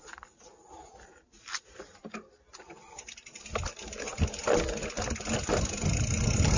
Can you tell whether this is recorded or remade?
recorded